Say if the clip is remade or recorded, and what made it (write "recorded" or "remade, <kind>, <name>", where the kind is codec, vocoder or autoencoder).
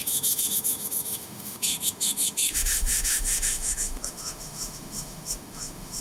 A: remade, autoencoder, DAC-VAE